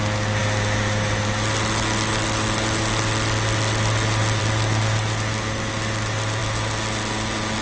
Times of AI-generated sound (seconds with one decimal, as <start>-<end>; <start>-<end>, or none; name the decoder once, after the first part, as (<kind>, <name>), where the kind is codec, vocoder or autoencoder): none